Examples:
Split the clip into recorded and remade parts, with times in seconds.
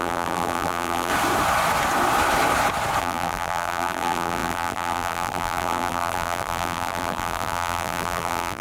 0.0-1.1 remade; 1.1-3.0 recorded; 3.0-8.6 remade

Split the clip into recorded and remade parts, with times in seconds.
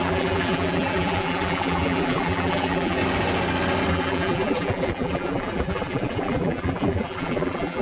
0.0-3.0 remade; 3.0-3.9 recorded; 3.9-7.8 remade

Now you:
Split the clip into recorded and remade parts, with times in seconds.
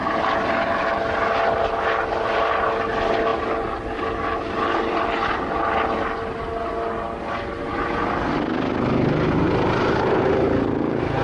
0.0-11.2 recorded